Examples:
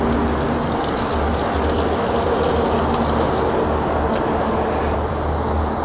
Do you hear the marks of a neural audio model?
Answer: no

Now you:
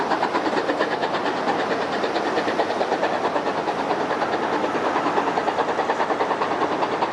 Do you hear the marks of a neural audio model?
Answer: no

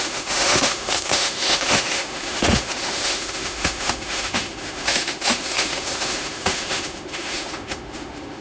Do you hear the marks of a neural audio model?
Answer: yes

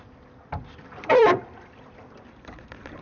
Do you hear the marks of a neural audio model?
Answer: yes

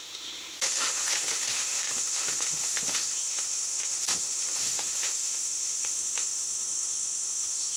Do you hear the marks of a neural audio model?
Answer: yes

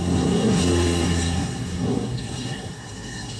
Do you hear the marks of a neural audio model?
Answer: yes